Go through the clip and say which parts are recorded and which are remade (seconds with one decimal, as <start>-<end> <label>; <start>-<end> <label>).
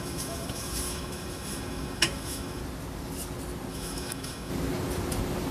0.0-2.6 remade; 2.6-3.7 recorded; 3.7-4.5 remade; 4.5-5.5 recorded